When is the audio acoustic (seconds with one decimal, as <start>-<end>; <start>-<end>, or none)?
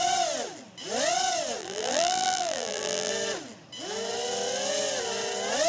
0.0-1.6; 3.1-5.7